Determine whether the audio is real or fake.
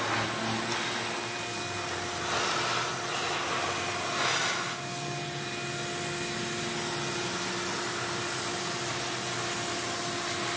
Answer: real